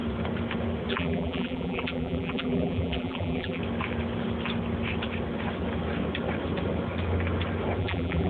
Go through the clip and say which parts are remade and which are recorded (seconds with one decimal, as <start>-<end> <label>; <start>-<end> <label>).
0.0-0.9 recorded; 0.9-3.6 remade; 3.6-7.8 recorded; 7.8-8.3 remade